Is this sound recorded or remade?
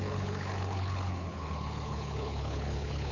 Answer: remade